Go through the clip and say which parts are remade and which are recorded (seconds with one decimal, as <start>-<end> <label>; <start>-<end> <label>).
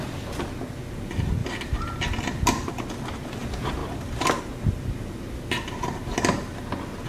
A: 0.0-1.4 recorded; 1.4-2.8 remade; 2.8-7.1 recorded